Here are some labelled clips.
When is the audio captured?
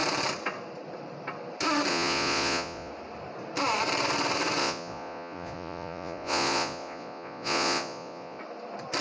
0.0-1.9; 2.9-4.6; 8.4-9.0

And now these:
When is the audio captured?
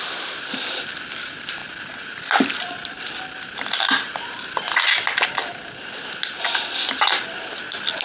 0.0-8.0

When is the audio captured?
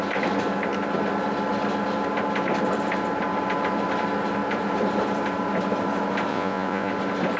0.0-6.3; 6.9-7.4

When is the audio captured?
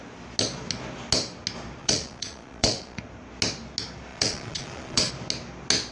0.0-1.8; 3.0-4.1; 5.1-5.9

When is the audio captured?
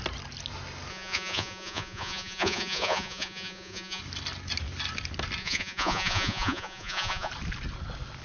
0.0-0.9; 4.0-5.4; 7.3-8.2